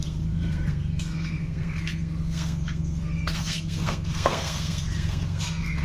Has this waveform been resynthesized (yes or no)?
yes